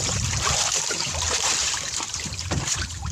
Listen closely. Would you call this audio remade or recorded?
remade